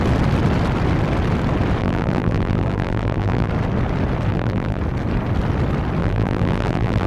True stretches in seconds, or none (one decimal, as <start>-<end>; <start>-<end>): 0.0-1.8; 3.5-4.3; 4.8-6.0